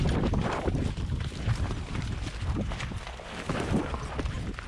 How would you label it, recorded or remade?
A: recorded